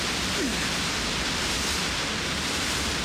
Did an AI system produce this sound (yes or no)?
no